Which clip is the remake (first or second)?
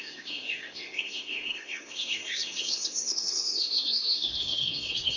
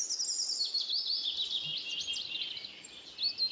first